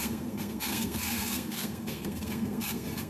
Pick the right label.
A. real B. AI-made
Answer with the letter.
B